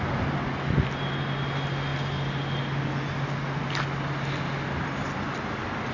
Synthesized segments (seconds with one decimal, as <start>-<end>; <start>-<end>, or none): none